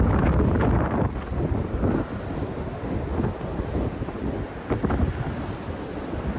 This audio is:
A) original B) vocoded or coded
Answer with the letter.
A